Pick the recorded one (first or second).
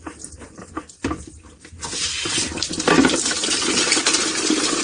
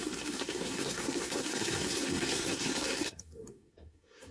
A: first